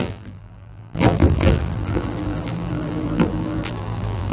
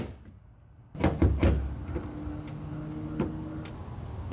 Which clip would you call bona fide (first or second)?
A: second